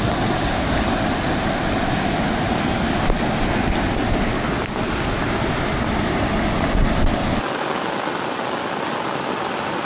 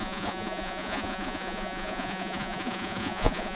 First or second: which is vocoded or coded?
second